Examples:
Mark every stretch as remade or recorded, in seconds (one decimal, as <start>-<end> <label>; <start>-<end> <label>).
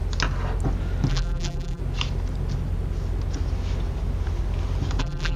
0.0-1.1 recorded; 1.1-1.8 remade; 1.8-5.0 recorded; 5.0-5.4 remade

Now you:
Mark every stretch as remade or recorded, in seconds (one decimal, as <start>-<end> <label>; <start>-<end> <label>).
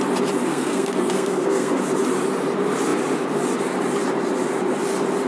0.0-0.5 recorded; 0.5-1.8 remade; 1.8-5.3 recorded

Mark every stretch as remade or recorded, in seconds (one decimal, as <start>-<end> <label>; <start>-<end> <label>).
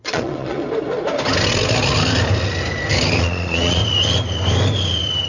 0.0-0.6 remade; 0.6-3.2 recorded; 3.2-3.8 remade; 3.8-5.3 recorded